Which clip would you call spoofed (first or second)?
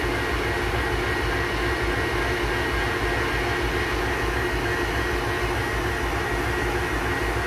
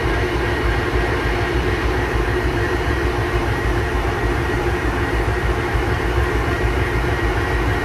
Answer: second